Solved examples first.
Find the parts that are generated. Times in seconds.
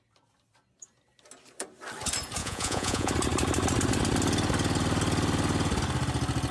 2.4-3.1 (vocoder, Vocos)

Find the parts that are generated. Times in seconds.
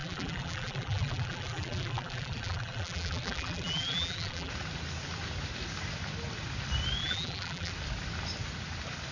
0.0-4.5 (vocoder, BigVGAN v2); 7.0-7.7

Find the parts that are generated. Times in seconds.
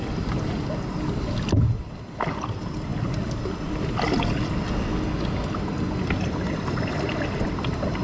none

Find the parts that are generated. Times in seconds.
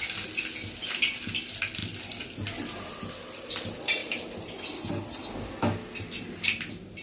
4.0-4.6 (vocoder, BigVGAN v2)